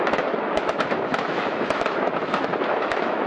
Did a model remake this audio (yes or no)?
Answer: yes